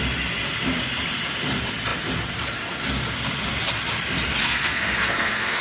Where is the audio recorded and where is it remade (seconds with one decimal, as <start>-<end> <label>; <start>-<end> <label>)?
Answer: 0.0-4.4 recorded; 4.4-5.6 remade